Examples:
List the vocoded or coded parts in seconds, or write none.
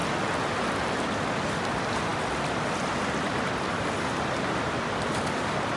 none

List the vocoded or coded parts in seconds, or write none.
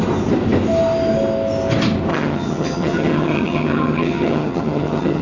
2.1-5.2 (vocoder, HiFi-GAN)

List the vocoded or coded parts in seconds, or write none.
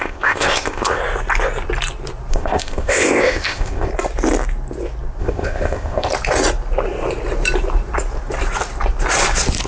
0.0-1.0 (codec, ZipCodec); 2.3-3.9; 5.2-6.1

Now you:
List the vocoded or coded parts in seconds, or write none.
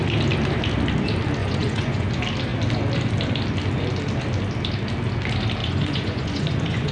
1.4-2.1 (vocoder, Vocos); 5.6-6.9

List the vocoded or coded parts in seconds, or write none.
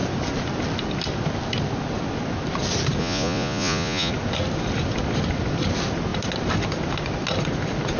3.0-4.1 (vocoder, Vocos)